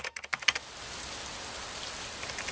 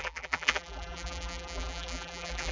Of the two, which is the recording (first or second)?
first